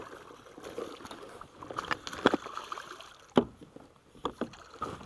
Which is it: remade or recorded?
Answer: recorded